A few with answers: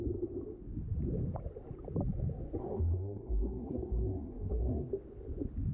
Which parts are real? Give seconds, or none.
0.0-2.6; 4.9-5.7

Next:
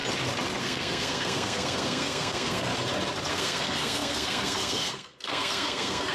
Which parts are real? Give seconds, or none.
0.0-0.6; 2.7-3.3